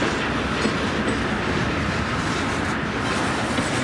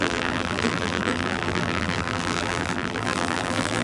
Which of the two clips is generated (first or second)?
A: second